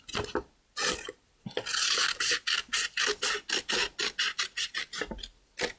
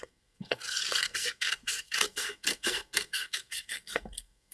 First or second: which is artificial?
second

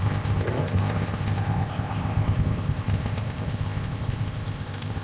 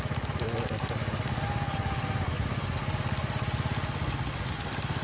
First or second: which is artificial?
first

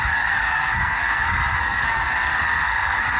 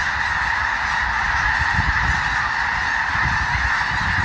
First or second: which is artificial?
first